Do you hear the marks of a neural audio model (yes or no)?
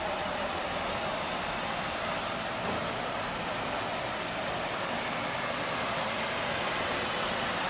yes